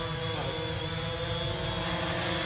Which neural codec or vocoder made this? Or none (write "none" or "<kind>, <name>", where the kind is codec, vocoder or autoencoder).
none